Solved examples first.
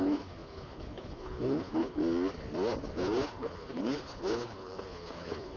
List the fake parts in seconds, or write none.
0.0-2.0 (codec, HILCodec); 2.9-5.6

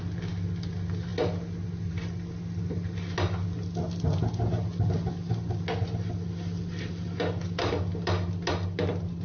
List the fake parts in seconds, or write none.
none

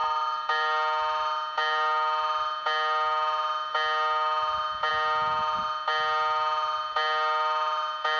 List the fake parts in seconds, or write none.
none

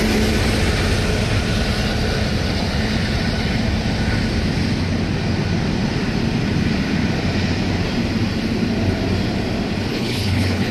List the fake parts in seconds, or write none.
9.9-10.7 (codec, HILCodec)

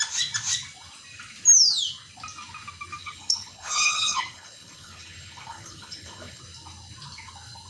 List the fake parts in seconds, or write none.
3.0-6.4 (codec, HILCodec)